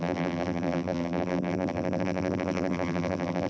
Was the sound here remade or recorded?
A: remade